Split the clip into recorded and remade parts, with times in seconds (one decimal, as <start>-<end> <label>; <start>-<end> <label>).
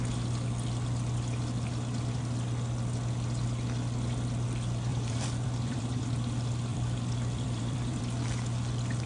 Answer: 0.0-4.9 recorded; 4.9-6.0 remade; 6.0-6.7 recorded; 6.7-8.0 remade; 8.0-9.1 recorded